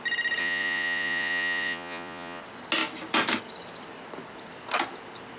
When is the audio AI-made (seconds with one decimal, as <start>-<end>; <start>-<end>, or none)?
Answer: 0.4-2.4